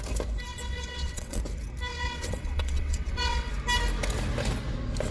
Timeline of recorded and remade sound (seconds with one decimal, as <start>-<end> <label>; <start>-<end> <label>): 0.0-0.5 recorded; 0.5-1.4 remade; 1.4-1.9 recorded; 1.9-3.5 remade; 3.5-5.1 recorded